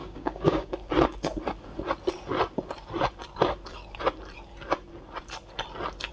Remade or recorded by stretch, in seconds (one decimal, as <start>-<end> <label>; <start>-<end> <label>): 0.0-0.7 remade; 0.7-6.1 recorded